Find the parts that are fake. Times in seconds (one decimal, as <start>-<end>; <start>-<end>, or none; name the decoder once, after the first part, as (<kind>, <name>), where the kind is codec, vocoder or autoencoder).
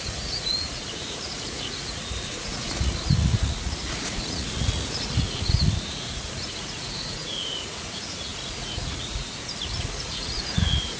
0.0-11.0 (vocoder, Vocos)